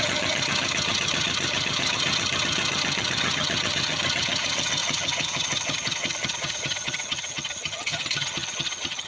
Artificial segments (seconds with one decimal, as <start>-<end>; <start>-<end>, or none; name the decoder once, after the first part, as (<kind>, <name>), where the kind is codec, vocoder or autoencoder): 0.0-9.1 (vocoder, HiFi-GAN)